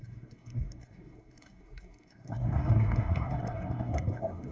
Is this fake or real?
fake